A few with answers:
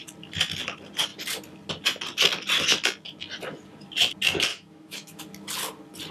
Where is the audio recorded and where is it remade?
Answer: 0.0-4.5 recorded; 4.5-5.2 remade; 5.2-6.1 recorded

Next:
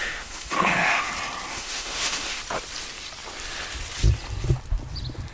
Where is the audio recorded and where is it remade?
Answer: 0.0-1.1 remade; 1.1-1.5 recorded; 1.5-2.4 remade; 2.4-5.3 recorded

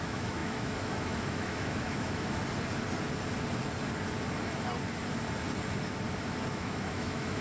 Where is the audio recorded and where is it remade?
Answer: 0.0-2.4 remade; 2.4-6.5 recorded; 6.5-7.4 remade

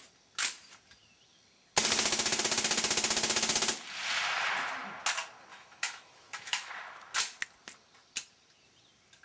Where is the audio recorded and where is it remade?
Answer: 0.0-5.5 recorded; 5.5-6.7 remade; 6.7-9.2 recorded